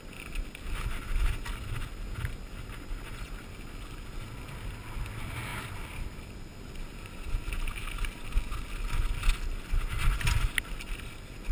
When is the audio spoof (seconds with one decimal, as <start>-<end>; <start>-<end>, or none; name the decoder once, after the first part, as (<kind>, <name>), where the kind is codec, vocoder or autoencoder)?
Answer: 5.5-6.5 (vocoder, BigVGAN v2)